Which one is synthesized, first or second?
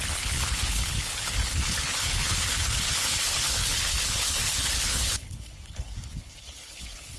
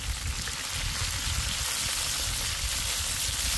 first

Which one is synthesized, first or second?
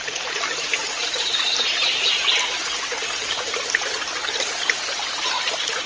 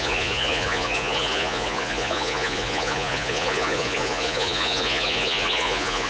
second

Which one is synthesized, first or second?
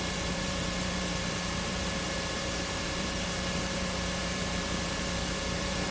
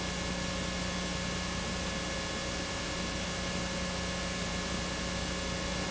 first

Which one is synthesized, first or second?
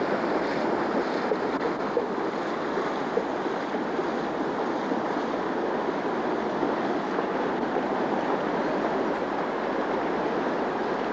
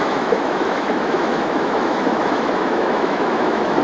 second